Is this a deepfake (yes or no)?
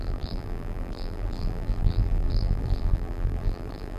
yes